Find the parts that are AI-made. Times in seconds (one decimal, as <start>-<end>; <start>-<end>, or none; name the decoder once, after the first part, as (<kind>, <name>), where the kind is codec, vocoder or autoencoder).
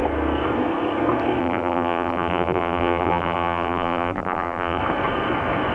1.4-4.8 (vocoder, BigVGAN v2)